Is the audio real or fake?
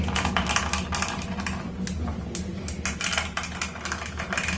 real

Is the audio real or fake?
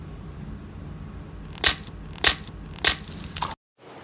real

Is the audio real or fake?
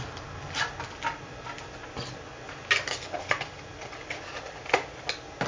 real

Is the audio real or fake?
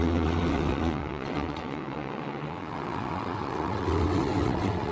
fake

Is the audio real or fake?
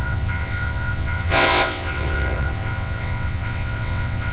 fake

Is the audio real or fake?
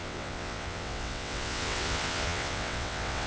fake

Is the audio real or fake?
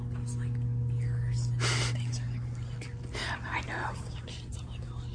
real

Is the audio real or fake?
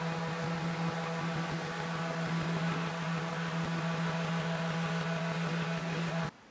real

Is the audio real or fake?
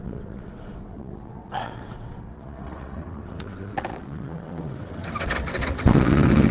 fake